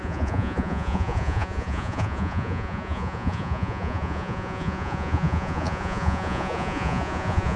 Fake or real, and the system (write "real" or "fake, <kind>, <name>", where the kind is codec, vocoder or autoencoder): fake, vocoder, Vocos